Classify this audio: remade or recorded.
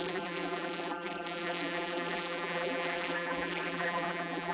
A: remade